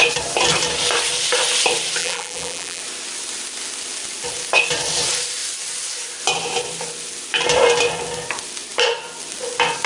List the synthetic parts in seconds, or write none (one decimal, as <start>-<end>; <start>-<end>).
2.0-2.8

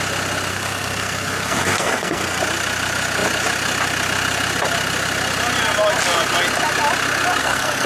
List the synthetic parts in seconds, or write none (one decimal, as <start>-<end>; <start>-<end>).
0.5-2.4; 7.4-7.9

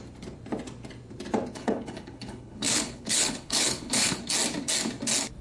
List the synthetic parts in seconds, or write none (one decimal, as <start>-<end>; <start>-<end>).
1.5-4.2